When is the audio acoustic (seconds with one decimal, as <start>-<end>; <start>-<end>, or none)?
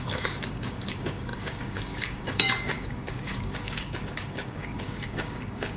none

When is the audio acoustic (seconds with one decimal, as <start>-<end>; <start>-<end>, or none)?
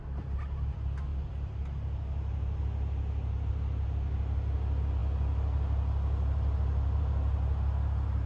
0.0-8.3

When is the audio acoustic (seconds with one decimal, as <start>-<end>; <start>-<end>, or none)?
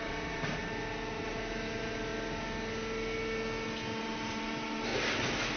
0.6-1.2; 2.1-4.0; 4.9-5.6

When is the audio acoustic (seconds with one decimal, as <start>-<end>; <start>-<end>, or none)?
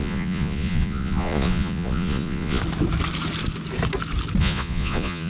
2.6-4.4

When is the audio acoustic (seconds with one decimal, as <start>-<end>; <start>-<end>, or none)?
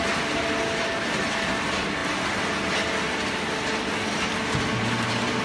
0.0-5.4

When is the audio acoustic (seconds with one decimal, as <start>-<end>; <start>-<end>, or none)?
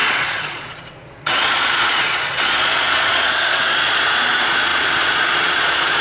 none